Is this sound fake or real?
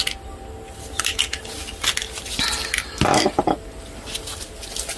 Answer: real